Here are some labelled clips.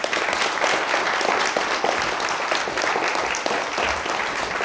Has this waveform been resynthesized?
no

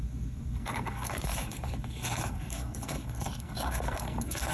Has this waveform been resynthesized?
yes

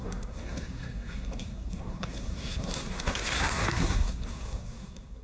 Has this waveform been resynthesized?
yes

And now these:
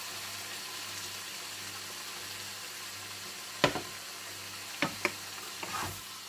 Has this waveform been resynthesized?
no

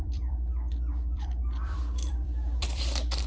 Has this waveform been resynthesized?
yes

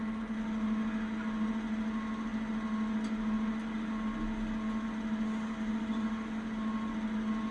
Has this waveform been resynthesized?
no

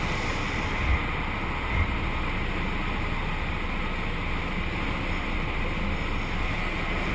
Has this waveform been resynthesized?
no